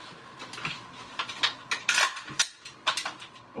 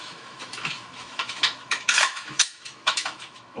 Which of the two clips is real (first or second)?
first